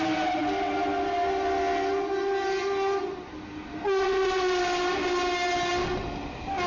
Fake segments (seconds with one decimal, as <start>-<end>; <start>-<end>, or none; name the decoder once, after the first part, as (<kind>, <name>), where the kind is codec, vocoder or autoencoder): none